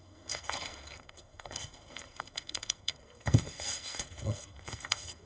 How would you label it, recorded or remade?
remade